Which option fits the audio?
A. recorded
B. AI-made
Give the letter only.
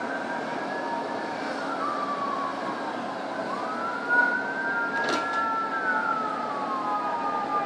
A